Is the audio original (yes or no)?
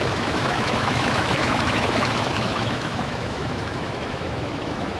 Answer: no